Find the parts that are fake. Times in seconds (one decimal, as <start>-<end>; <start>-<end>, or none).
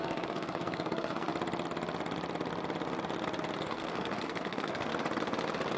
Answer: 0.0-1.3; 3.6-4.9